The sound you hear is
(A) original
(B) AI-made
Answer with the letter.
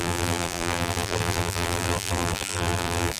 B